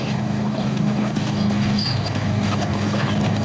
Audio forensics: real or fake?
fake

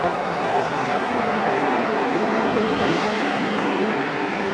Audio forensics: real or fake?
fake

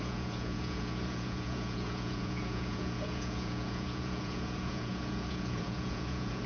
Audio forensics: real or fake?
fake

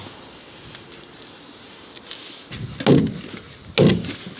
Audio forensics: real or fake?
real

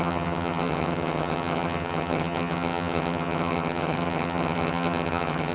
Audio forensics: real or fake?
fake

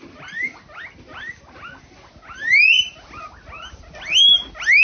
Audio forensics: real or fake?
real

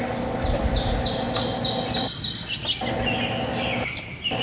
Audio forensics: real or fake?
real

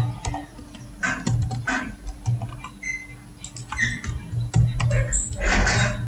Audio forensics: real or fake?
real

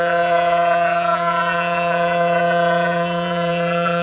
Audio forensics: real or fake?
fake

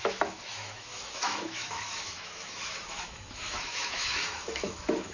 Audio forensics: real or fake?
fake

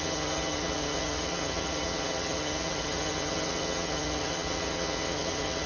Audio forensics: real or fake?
fake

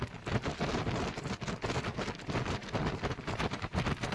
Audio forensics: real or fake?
real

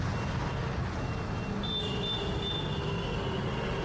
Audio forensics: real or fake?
real